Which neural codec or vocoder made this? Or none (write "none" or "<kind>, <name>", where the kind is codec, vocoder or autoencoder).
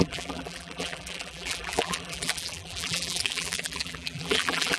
vocoder, BigVGAN v2